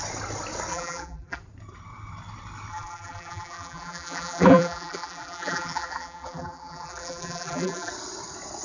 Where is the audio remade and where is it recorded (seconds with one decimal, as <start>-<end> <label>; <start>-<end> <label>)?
0.0-0.7 recorded; 0.7-1.4 remade; 1.4-2.7 recorded; 2.7-7.9 remade; 7.9-8.6 recorded